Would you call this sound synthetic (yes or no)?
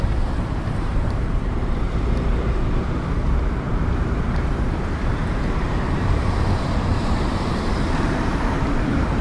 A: yes